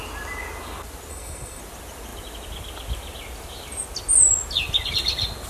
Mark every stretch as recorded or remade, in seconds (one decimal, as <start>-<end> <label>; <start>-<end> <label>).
0.0-1.1 recorded; 1.1-1.6 remade; 1.6-5.5 recorded